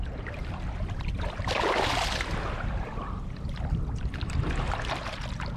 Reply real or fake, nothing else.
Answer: real